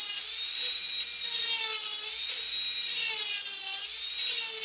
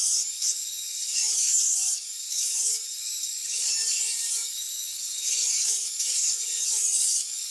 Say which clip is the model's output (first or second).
second